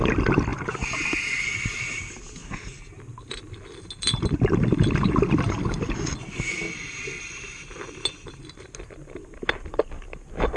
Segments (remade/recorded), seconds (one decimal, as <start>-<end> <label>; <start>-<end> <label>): 0.0-10.6 recorded